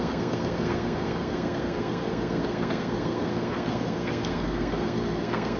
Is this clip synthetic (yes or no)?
yes